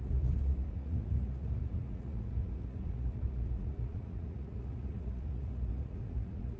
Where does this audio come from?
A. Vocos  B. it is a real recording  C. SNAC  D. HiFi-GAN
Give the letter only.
A